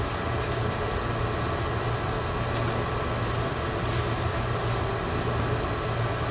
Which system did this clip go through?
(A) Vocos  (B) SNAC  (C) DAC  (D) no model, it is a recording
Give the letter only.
D